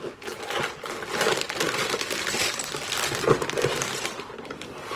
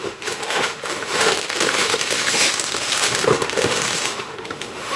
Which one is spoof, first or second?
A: second